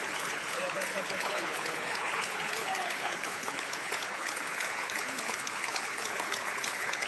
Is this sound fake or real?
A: fake